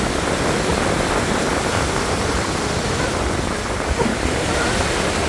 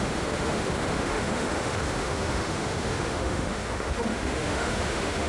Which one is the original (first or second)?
first